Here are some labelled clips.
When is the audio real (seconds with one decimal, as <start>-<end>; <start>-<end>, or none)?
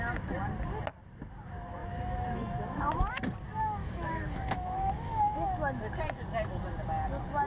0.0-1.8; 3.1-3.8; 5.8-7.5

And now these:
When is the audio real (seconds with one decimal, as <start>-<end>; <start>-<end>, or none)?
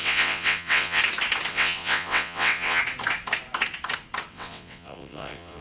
1.0-1.5; 2.8-4.3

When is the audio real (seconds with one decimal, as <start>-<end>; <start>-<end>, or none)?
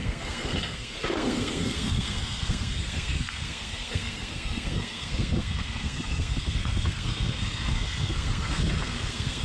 none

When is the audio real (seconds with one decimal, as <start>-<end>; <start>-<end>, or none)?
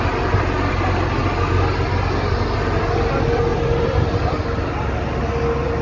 0.0-5.8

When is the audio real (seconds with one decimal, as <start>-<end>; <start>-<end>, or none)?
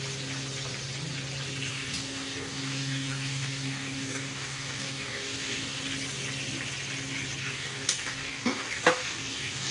0.0-1.7; 5.8-7.4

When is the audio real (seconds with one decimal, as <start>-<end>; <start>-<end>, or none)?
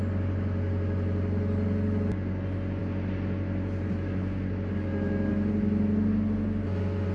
0.0-7.1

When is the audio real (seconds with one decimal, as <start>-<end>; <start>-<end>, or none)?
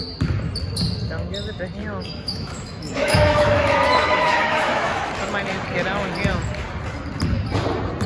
0.0-1.8; 5.1-8.1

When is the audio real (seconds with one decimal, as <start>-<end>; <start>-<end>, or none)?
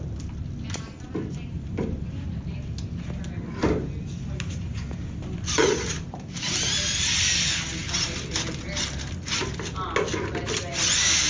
0.0-11.3